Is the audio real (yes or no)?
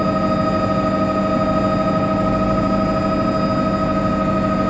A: yes